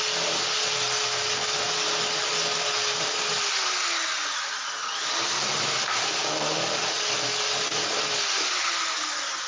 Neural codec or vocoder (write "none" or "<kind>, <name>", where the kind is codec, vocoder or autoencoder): none